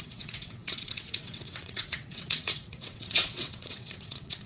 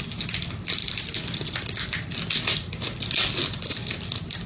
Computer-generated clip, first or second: first